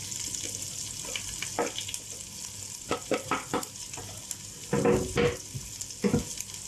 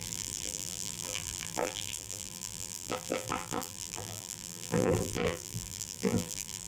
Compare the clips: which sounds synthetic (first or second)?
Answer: second